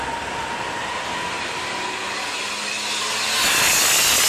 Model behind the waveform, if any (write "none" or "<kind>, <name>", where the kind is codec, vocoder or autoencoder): none